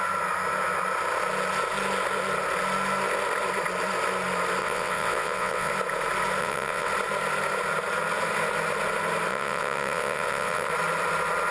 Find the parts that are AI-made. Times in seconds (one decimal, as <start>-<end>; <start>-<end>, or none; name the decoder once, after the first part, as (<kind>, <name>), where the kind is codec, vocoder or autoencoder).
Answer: 4.6-5.7 (vocoder, WaveNeXt); 6.4-6.9; 9.3-10.7